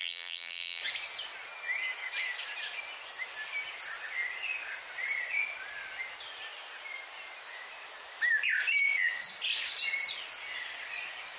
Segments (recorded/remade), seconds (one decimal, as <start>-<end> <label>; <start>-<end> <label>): 0.0-0.8 remade; 0.8-11.4 recorded